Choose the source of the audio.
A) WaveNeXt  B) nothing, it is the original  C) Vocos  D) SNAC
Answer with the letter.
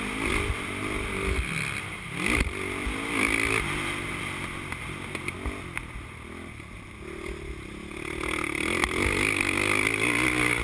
B